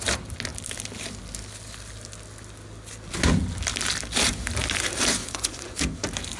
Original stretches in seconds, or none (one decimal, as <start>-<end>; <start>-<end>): 0.0-5.2; 5.8-6.4